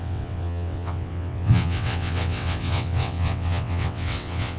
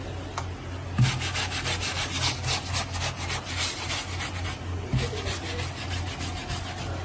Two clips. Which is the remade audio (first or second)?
first